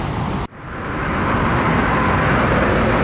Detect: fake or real real